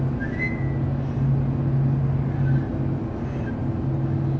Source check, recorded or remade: recorded